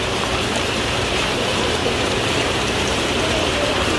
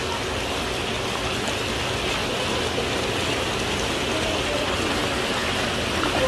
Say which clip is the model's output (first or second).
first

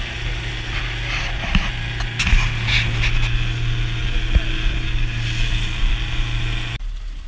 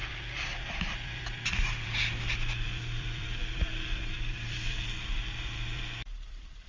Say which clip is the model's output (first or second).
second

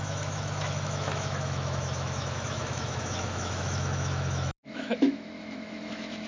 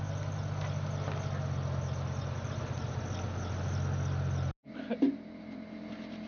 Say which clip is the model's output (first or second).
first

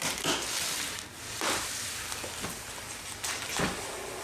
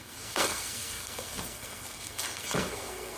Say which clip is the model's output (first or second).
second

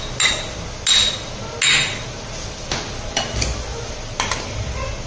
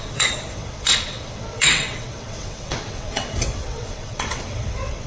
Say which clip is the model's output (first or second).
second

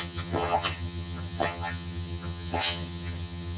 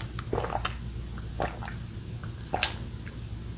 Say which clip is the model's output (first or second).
first